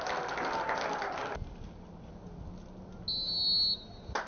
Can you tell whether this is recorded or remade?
recorded